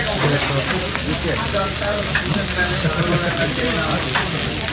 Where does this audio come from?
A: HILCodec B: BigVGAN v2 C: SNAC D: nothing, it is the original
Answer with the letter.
D